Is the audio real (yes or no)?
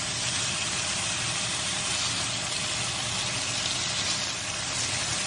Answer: yes